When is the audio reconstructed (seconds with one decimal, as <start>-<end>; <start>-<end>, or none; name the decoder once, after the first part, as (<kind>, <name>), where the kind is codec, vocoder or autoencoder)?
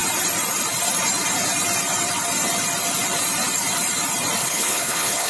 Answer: 4.4-5.3 (codec, HILCodec)